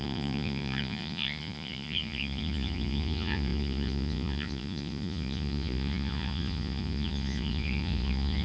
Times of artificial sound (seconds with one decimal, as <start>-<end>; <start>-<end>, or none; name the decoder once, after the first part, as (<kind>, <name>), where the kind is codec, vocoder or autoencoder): 0.0-8.4 (vocoder, Vocos)